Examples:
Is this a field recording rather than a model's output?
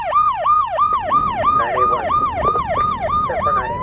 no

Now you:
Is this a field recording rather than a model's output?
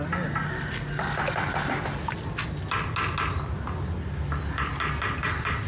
yes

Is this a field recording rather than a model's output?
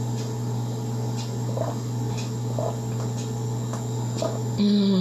yes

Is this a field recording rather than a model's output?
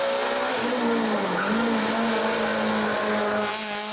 yes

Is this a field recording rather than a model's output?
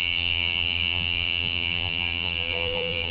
no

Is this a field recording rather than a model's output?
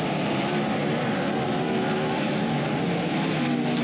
yes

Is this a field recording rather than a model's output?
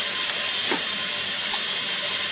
yes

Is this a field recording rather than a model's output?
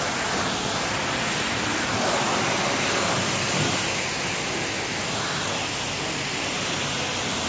yes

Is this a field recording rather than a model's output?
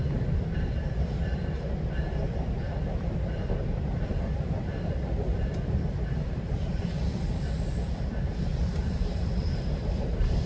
no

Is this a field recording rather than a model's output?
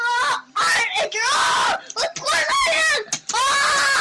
yes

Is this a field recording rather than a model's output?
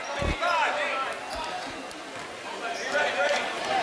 yes